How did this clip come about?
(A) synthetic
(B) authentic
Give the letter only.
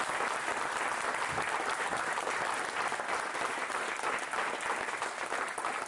B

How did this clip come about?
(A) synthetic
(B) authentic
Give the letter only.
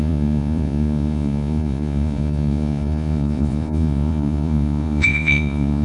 A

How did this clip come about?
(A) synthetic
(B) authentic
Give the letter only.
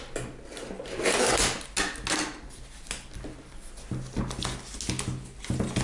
B